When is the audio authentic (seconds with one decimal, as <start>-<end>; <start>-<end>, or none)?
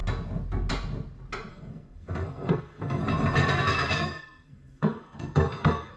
0.0-1.5; 3.0-3.4